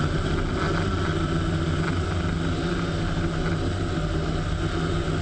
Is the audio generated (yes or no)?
no